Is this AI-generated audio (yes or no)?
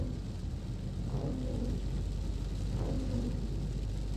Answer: no